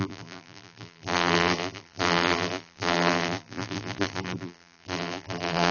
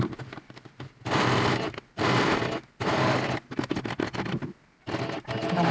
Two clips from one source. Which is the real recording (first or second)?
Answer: second